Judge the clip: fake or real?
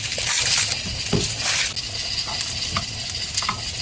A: real